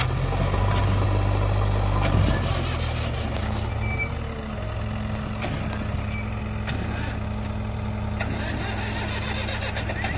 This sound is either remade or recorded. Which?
recorded